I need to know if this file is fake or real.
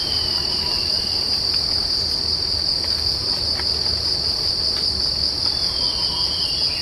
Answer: real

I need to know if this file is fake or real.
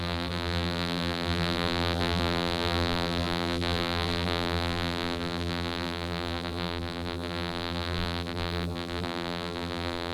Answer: fake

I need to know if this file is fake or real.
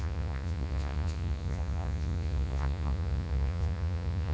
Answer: fake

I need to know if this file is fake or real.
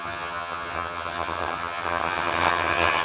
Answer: fake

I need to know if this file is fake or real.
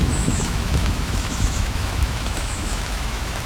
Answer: fake